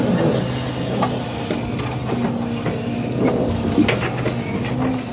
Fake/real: real